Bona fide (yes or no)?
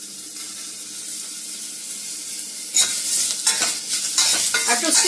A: yes